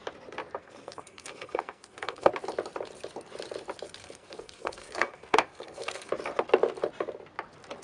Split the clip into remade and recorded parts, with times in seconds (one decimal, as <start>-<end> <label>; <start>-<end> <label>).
0.0-0.6 recorded; 0.6-2.3 remade; 2.3-4.0 recorded; 4.0-6.1 remade; 6.1-7.8 recorded

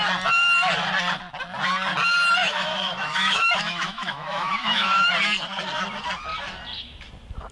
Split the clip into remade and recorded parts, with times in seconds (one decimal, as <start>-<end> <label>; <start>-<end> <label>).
0.0-2.4 recorded; 2.4-5.1 remade; 5.1-7.5 recorded

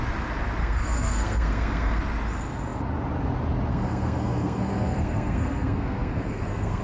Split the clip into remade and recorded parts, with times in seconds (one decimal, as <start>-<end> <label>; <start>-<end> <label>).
0.0-0.6 recorded; 0.6-2.0 remade; 2.0-3.7 recorded; 3.7-6.8 remade

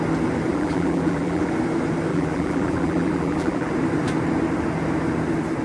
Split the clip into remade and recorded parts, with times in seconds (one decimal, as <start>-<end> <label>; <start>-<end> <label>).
0.0-0.5 recorded; 0.5-1.5 remade; 1.5-2.1 recorded; 2.1-3.7 remade; 3.7-5.6 recorded

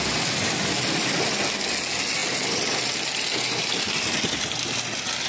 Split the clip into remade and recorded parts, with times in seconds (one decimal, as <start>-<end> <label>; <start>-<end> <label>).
0.0-5.3 recorded

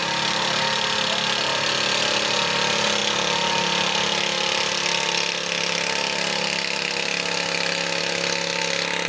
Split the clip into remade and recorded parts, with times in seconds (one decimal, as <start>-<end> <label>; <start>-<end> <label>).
0.0-9.1 recorded

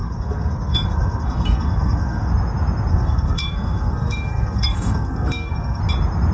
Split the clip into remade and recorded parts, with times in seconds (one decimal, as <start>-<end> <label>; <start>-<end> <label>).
0.0-2.3 remade; 2.3-2.9 recorded; 2.9-5.8 remade; 5.8-6.3 recorded